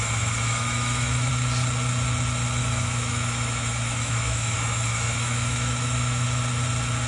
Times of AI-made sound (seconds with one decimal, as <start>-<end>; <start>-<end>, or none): 0.0-1.3; 2.6-6.4